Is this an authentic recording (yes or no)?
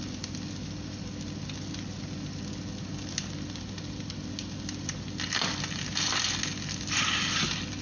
yes